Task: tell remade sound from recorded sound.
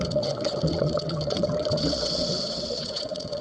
remade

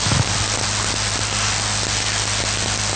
recorded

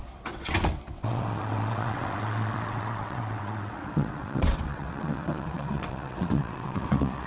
remade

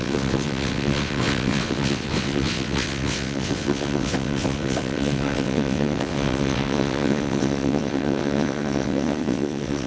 remade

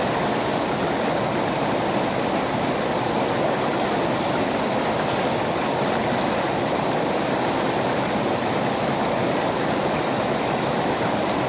recorded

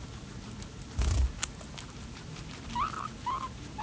recorded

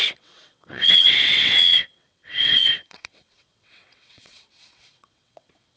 remade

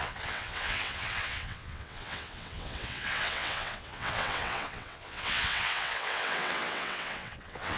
remade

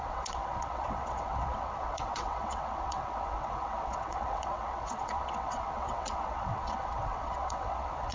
remade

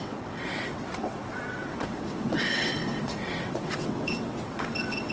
remade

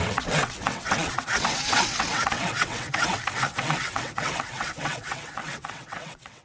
remade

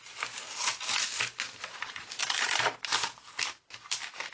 recorded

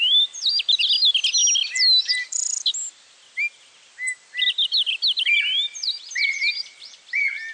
recorded